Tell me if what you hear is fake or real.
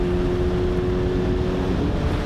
real